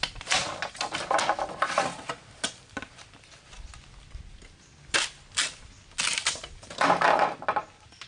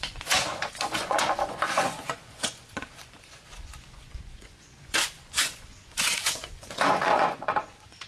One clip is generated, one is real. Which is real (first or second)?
first